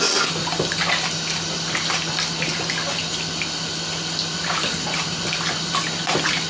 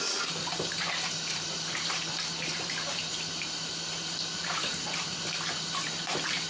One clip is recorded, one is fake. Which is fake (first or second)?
second